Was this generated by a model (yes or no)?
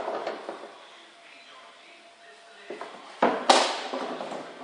no